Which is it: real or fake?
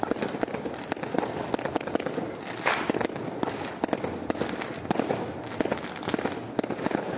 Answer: real